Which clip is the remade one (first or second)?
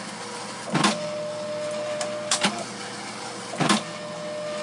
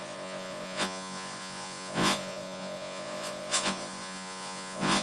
second